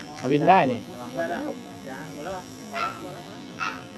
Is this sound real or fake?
fake